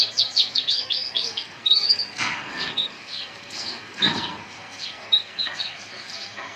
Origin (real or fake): fake